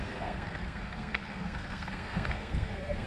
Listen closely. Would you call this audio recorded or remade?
remade